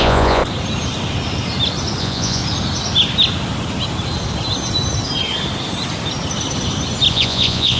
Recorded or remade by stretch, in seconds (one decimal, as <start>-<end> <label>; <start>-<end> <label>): 0.0-0.4 remade; 0.4-2.0 recorded; 2.0-2.4 remade; 2.4-7.1 recorded; 7.1-7.8 remade